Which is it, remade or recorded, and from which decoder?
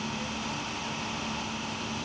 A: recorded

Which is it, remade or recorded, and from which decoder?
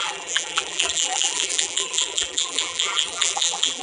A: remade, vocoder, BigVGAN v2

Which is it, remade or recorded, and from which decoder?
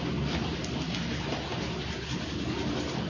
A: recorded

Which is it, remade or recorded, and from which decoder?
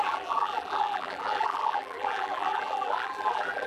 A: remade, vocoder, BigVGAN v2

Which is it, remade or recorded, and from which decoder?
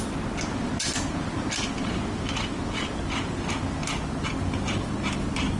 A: recorded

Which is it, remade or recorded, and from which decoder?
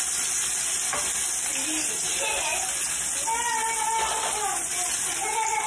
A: recorded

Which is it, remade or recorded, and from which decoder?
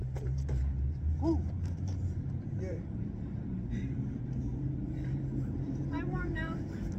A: remade, vocoder, BigVGAN v2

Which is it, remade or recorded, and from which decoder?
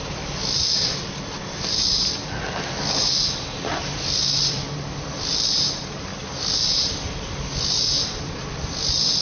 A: remade, vocoder, BigVGAN v2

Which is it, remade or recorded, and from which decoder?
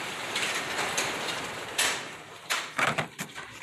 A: remade, vocoder, BigVGAN v2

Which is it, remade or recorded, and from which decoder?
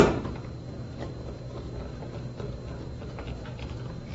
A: recorded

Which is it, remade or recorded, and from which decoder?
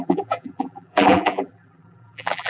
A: remade, vocoder, BigVGAN v2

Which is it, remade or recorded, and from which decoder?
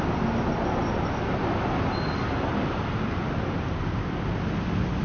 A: recorded